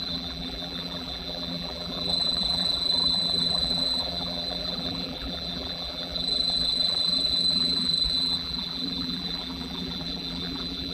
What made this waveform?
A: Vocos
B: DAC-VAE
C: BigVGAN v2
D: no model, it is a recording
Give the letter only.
C